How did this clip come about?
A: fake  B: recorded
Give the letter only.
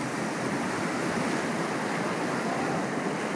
B